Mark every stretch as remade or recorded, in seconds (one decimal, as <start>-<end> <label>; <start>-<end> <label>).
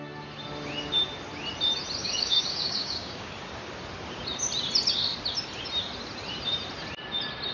0.0-2.0 recorded; 2.0-3.3 remade; 3.3-7.5 recorded